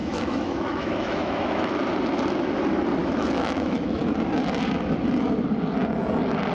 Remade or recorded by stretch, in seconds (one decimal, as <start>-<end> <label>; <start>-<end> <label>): 0.0-1.7 remade; 1.7-3.0 recorded; 3.0-4.0 remade; 4.0-6.5 recorded